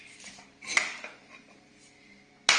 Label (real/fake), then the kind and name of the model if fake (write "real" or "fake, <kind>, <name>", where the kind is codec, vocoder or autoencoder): fake, vocoder, BigVGAN v2